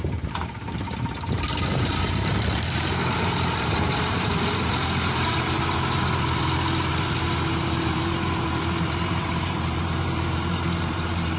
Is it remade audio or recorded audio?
remade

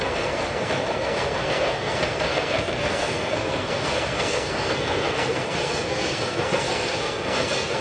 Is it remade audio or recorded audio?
remade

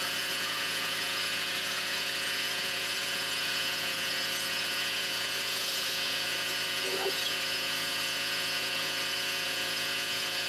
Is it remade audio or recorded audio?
remade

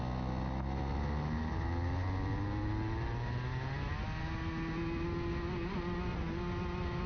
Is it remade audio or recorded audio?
recorded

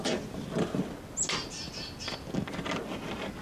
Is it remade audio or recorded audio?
recorded